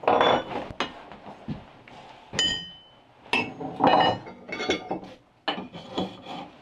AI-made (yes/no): no